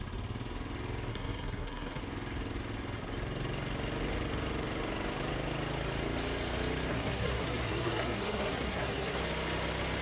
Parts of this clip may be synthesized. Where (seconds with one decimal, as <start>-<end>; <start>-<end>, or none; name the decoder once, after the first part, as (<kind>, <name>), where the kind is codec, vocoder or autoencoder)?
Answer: 1.1-2.0 (codec, SNAC); 6.9-9.2